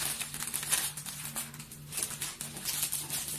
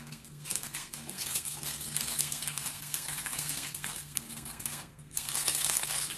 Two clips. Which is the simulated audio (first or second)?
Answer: second